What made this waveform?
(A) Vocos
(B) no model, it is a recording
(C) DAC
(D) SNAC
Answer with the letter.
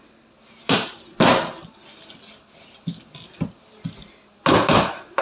B